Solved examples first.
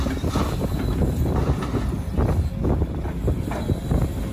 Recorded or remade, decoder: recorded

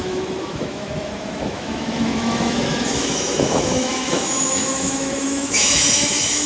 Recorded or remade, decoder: remade, autoencoder, DAC-VAE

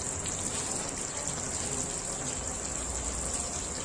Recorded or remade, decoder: recorded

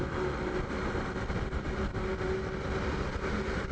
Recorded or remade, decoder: recorded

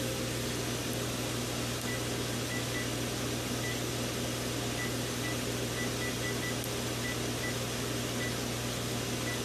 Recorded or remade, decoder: recorded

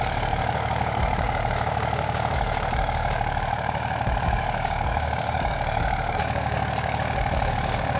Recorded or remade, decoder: remade, codec, DAC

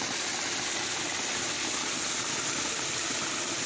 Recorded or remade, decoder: recorded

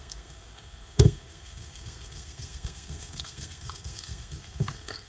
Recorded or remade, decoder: remade, codec, SNAC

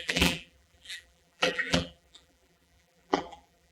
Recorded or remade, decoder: remade, vocoder, BigVGAN v2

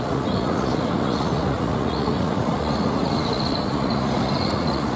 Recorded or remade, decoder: remade, vocoder, Vocos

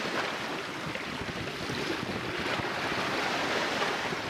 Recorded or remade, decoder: recorded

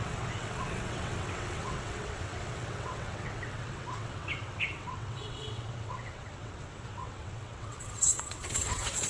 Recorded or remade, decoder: remade, vocoder, WaveNeXt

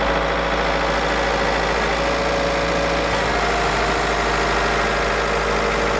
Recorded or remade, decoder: recorded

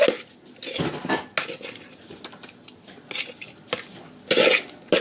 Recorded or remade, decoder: recorded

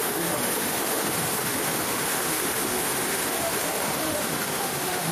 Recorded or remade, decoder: remade, autoencoder, DAC-VAE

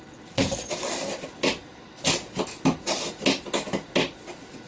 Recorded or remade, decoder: recorded